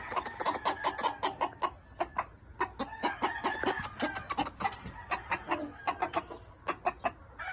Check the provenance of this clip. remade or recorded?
recorded